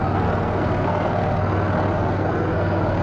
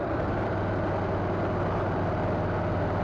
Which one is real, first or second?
second